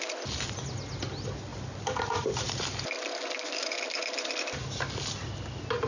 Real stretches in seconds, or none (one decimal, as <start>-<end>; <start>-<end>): 0.0-5.9